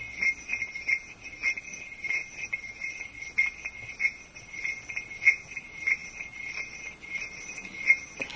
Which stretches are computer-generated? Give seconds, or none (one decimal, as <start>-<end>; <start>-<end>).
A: none